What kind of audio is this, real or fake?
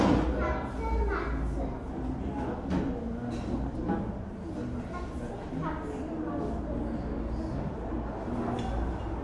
real